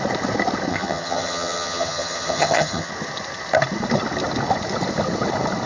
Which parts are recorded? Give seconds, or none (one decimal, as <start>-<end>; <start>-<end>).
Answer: 0.0-0.7; 2.9-5.7